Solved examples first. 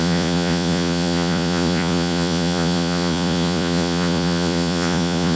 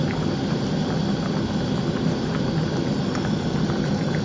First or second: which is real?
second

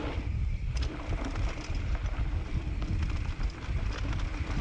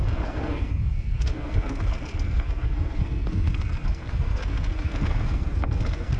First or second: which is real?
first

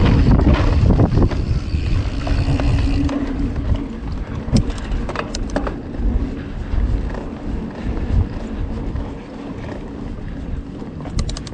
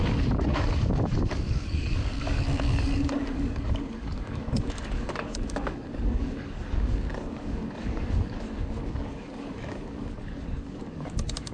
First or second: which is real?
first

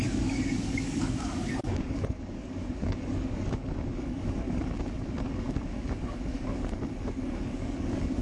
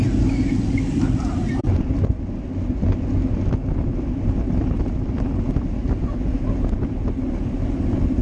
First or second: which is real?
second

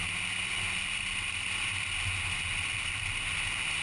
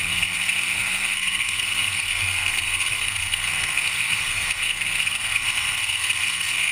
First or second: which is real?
first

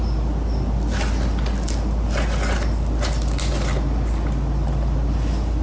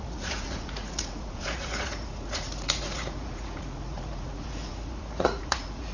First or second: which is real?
first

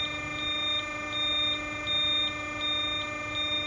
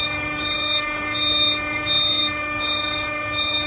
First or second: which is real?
first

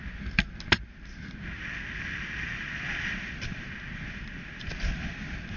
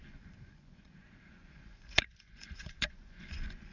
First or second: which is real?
first